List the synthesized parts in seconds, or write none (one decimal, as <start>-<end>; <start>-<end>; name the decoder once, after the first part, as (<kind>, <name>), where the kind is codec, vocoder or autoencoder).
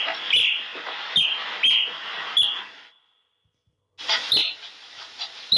none